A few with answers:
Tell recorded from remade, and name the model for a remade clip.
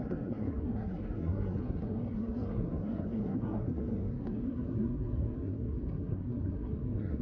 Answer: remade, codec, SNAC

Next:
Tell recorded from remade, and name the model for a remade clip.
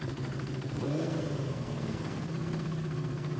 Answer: remade, codec, SNAC